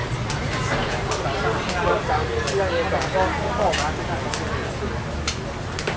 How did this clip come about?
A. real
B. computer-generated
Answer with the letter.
A